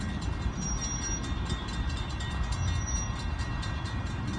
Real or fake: real